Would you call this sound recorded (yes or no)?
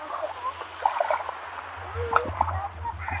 yes